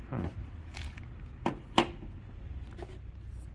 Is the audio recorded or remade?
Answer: recorded